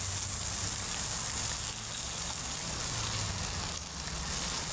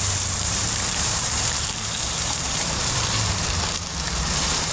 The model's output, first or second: second